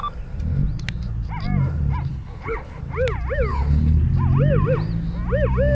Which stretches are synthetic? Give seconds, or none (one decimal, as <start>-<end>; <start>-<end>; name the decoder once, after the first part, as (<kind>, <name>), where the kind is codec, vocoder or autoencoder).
2.1-2.8 (codec, HILCodec); 3.5-4.0